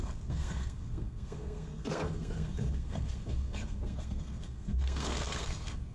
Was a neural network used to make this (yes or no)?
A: yes